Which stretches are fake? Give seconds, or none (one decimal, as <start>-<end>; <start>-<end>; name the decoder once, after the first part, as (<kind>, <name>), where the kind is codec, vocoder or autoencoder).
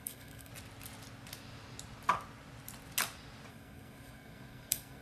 0.0-0.5 (codec, SNAC); 3.5-5.0